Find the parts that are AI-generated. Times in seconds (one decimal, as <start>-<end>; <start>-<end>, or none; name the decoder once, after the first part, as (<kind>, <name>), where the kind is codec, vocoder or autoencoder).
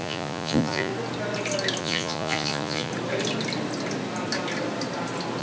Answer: 0.0-0.9 (vocoder, Vocos); 1.8-2.9